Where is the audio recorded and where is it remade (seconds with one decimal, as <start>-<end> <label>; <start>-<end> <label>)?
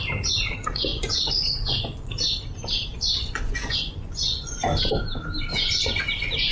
0.0-0.9 recorded; 0.9-2.1 remade; 2.1-2.9 recorded; 2.9-4.6 remade; 4.6-5.5 recorded; 5.5-6.0 remade; 6.0-6.5 recorded